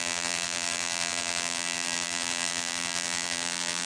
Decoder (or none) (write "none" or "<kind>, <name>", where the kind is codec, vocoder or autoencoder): vocoder, BigVGAN v2